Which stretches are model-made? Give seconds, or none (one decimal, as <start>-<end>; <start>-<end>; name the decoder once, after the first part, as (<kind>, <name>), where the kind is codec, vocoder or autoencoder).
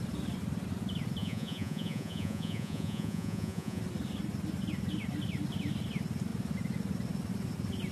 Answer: 1.2-3.8 (vocoder, Vocos)